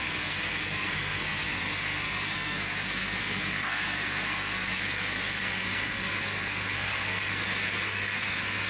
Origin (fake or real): fake